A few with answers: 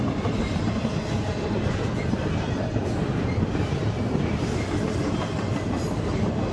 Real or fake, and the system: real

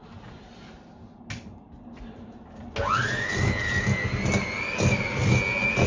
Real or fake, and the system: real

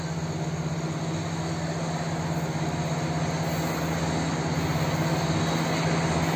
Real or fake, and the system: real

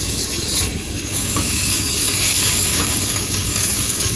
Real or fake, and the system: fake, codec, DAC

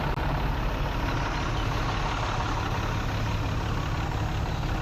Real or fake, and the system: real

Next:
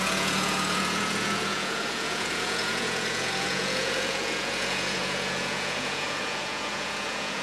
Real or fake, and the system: fake, vocoder, Vocos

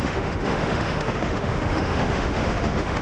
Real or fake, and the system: fake, autoencoder, DAC-VAE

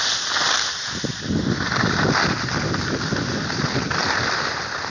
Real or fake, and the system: real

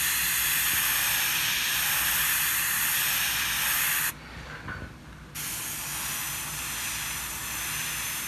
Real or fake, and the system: real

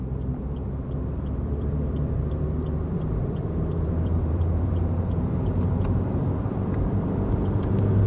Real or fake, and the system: fake, vocoder, BigVGAN v2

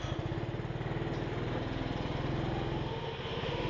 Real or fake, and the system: real